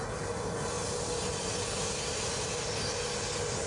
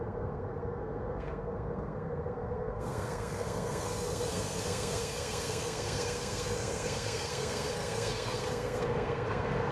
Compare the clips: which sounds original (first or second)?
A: first